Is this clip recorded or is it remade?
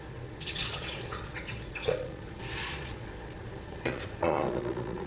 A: remade